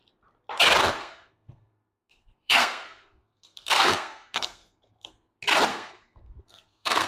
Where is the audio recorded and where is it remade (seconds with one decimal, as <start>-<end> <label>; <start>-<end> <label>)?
0.0-1.0 recorded; 1.0-5.3 remade; 5.3-5.7 recorded; 5.7-7.1 remade